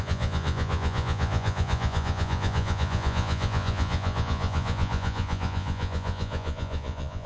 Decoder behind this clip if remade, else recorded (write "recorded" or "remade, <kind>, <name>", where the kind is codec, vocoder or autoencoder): remade, vocoder, Vocos